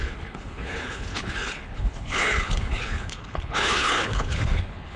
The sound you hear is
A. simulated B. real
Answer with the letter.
A